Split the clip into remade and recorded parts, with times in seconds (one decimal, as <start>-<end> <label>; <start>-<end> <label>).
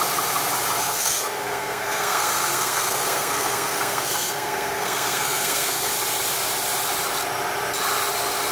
0.0-0.8 recorded; 0.8-5.9 remade; 5.9-8.5 recorded